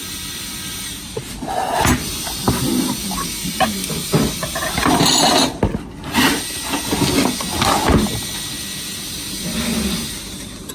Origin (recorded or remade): recorded